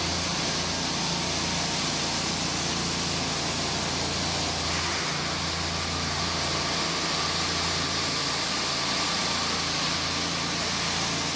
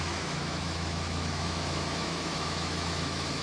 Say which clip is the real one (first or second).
first